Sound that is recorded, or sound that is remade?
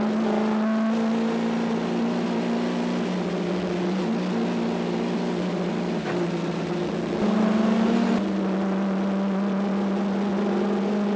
recorded